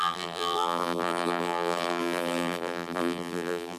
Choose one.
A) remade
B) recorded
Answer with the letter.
A